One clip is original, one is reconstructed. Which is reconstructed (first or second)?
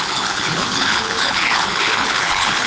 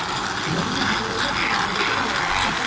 first